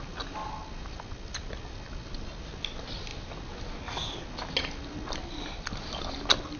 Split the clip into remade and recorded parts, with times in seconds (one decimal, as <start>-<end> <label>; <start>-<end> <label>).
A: 0.0-6.6 recorded